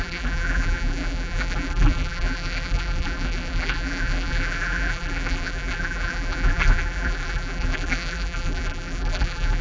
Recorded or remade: remade